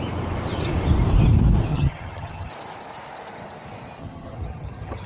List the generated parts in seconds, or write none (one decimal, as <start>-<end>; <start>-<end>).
1.7-2.5; 4.0-5.1